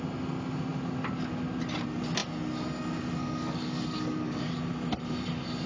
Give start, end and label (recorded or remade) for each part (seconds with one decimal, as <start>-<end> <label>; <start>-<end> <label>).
0.0-3.2 recorded; 3.2-4.4 remade; 4.4-5.7 recorded